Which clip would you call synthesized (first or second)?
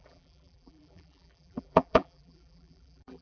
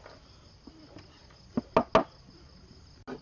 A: first